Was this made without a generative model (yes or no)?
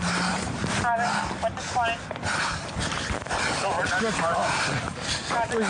yes